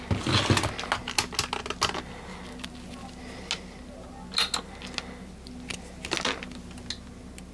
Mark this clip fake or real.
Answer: real